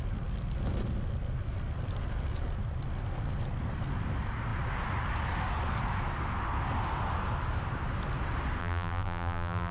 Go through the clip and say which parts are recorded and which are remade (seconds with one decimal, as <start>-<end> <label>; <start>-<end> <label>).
0.0-8.6 recorded; 8.6-9.7 remade